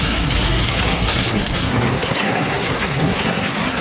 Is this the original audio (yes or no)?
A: no